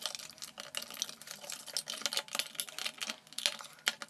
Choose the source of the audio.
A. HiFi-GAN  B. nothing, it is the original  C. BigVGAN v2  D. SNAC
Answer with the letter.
B